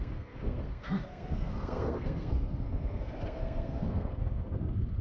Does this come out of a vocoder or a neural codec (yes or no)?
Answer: yes